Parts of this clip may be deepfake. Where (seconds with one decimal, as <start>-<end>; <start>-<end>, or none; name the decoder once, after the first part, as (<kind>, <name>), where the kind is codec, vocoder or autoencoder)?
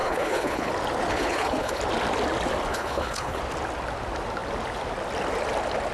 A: 0.0-0.7 (codec, HILCodec); 1.1-1.8; 2.7-3.4